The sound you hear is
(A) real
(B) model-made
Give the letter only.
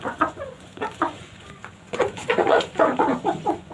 B